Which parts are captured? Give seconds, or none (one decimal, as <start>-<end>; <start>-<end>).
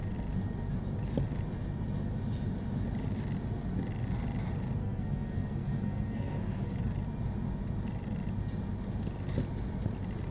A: 0.0-4.8; 6.8-10.3